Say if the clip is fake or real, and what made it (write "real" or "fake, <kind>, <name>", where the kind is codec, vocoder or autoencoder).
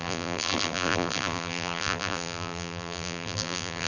fake, vocoder, BigVGAN v2